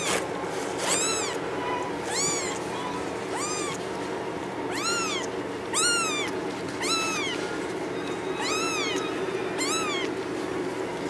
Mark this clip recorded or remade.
recorded